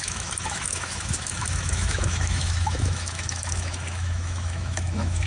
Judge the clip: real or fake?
fake